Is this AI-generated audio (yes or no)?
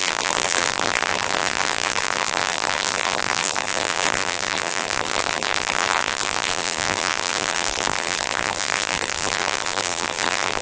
yes